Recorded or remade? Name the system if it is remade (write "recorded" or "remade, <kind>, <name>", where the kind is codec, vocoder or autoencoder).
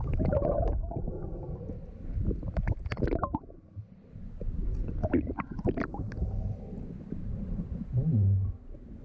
recorded